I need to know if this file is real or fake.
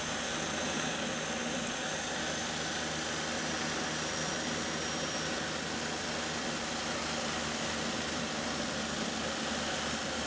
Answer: real